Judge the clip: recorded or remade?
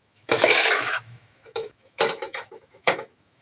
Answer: remade